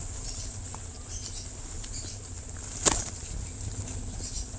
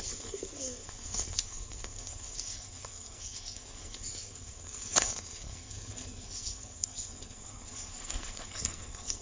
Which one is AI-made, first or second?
second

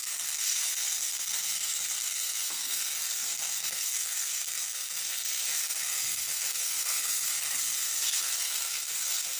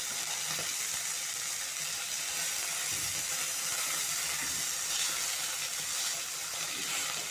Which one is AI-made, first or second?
first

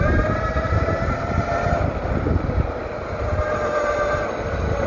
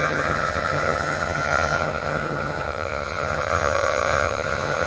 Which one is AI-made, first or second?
second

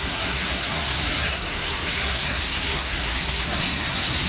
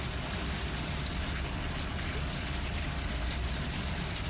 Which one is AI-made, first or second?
first